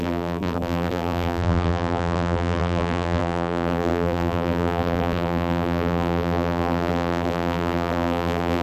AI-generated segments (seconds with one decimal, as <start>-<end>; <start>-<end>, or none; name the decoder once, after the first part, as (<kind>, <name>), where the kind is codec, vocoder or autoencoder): 0.0-8.6 (vocoder, BigVGAN v2)